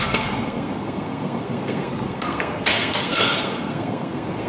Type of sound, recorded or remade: remade